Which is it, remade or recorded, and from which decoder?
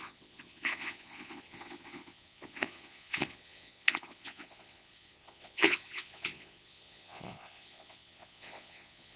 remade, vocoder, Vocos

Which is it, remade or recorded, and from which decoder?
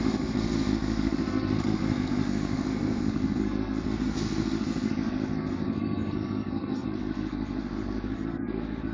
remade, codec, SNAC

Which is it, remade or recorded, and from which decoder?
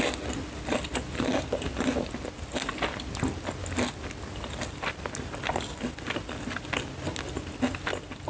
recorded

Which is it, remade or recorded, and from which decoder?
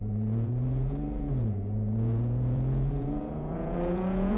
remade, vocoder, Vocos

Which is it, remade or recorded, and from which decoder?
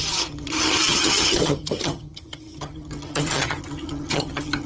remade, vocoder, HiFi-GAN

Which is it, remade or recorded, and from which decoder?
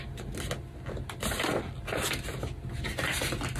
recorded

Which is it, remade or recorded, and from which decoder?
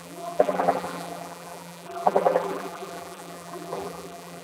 remade, vocoder, BigVGAN v2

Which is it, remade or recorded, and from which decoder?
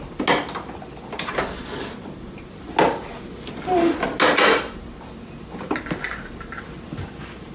recorded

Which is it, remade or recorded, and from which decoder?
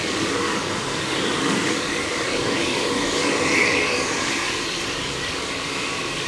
remade, codec, DAC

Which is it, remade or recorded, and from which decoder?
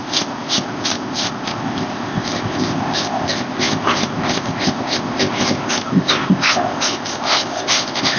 remade, codec, ZipCodec